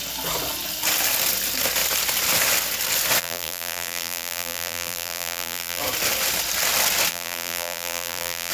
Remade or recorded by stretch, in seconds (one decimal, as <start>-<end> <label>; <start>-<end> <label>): 0.0-3.2 recorded; 3.2-5.8 remade; 5.8-7.1 recorded; 7.1-8.5 remade